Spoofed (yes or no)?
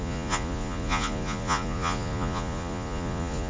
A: yes